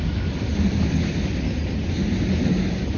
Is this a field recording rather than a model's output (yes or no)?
yes